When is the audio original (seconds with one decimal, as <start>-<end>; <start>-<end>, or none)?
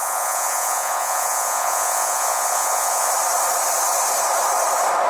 3.1-5.1